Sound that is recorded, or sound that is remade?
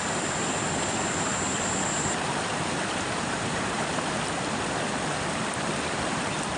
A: remade